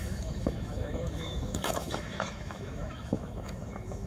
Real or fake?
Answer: fake